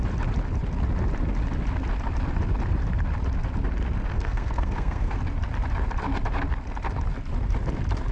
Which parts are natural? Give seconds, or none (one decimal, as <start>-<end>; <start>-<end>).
0.0-4.1; 5.2-8.1